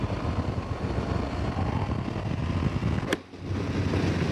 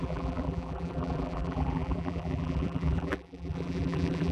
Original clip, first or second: first